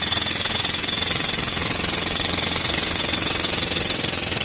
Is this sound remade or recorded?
remade